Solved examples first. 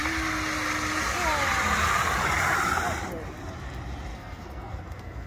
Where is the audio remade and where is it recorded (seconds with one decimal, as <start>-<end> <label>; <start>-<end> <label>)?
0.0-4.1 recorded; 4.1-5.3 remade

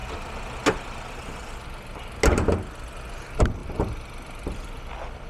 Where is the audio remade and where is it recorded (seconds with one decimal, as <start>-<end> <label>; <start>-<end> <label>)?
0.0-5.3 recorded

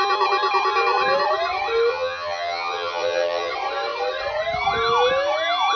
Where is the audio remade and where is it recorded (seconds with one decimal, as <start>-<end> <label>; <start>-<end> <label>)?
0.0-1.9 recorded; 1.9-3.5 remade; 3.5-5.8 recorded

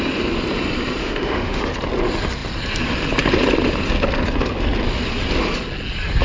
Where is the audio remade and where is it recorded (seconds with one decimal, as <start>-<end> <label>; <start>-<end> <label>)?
0.0-1.0 recorded; 1.0-1.6 remade; 1.6-6.2 recorded

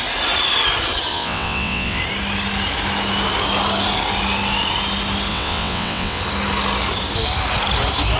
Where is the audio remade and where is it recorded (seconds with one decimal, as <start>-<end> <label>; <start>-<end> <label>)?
0.0-1.1 recorded; 1.1-2.0 remade; 2.0-5.3 recorded; 5.3-6.2 remade; 6.2-8.2 recorded